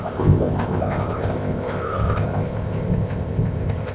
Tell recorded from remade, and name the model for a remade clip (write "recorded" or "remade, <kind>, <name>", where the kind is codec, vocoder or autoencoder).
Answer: remade, codec, ZipCodec